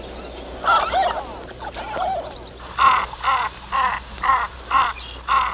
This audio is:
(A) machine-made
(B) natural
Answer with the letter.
B